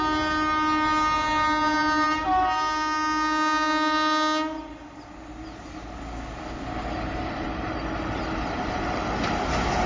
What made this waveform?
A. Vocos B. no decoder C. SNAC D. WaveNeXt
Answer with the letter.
B